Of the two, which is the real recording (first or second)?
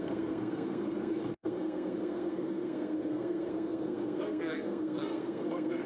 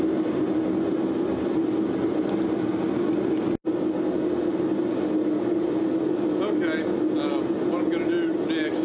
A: second